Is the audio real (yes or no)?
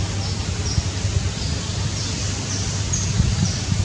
yes